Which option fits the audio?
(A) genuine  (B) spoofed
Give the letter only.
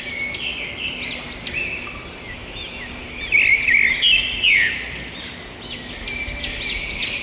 A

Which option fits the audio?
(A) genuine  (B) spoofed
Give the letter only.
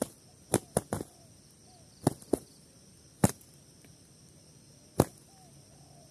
A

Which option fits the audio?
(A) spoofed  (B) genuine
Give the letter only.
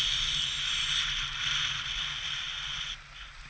B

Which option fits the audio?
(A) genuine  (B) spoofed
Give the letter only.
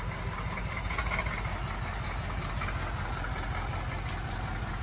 A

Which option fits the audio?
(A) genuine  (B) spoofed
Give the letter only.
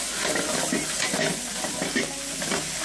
A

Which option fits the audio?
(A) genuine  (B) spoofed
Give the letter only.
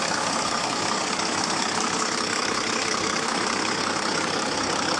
B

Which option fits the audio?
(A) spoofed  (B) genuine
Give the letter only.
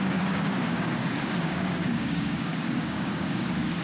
A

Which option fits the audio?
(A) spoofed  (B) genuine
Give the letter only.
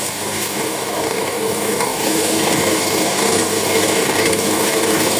A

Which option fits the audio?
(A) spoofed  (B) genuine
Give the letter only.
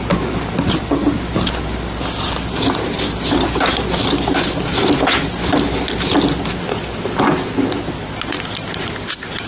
B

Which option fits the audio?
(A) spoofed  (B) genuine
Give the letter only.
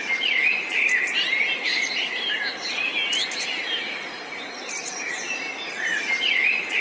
B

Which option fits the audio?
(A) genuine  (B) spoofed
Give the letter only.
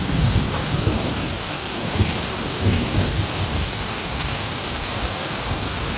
B